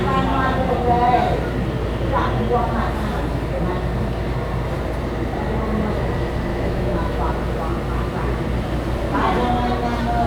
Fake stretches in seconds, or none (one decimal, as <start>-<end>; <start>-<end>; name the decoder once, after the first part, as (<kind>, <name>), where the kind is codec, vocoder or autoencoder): 6.5-7.3 (autoencoder, DAC-VAE)